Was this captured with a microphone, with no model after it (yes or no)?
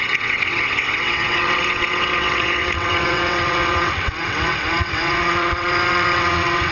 no